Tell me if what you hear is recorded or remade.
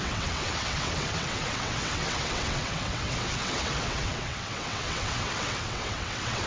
remade